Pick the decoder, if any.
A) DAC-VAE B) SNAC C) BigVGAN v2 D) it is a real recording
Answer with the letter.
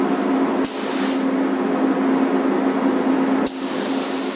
D